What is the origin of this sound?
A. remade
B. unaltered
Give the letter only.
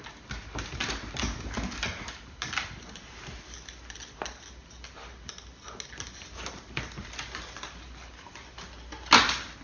B